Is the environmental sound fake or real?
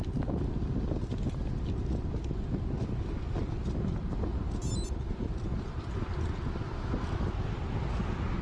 real